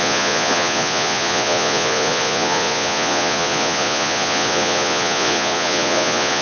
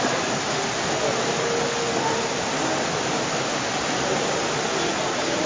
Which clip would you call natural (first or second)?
second